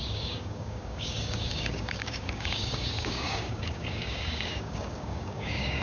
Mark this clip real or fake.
fake